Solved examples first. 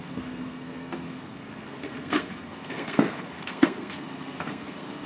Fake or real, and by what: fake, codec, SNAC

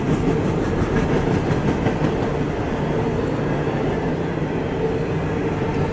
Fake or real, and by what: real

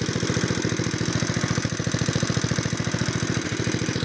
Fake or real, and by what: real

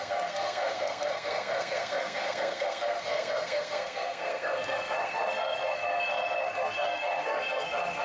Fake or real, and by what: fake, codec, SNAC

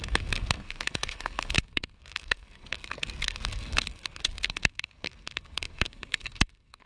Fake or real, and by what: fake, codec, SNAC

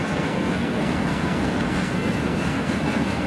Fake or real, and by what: fake, codec, SNAC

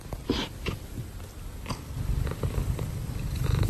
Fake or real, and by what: real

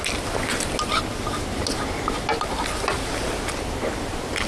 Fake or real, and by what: real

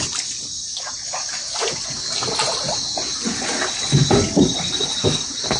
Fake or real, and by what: real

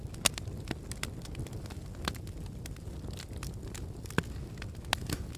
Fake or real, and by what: real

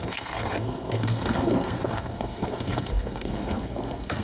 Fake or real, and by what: fake, codec, SNAC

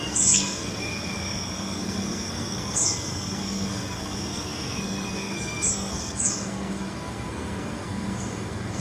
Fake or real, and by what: fake, codec, SNAC